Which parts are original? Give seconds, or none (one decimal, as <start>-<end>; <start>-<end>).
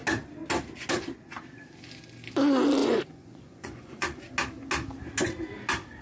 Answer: 0.0-2.8; 4.2-6.0